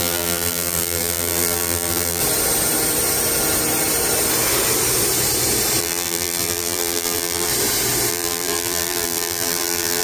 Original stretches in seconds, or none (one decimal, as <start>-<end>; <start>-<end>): 2.2-5.8; 7.5-8.1